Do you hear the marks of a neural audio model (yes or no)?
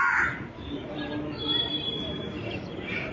yes